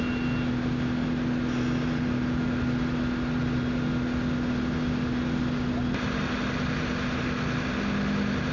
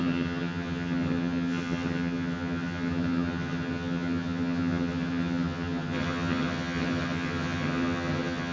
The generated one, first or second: second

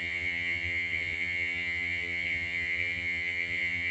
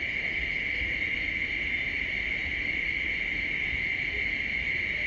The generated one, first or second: first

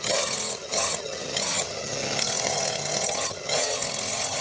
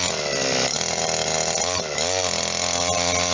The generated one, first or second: first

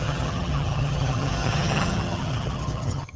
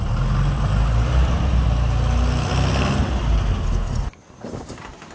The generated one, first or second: first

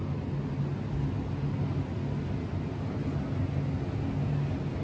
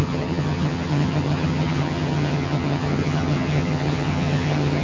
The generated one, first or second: second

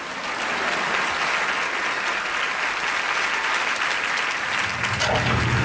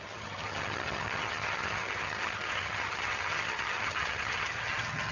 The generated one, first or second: second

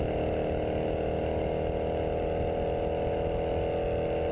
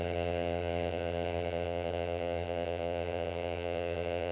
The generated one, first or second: second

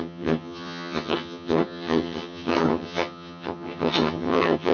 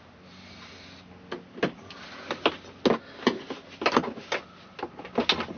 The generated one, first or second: first